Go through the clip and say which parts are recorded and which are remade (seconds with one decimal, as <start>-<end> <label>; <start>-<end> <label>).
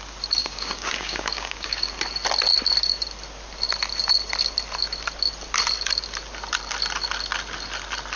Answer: 0.0-0.4 recorded; 0.4-1.9 remade; 1.9-8.2 recorded